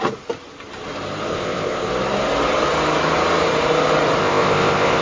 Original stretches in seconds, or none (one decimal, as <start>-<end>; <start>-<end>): 0.0-1.3; 1.9-4.2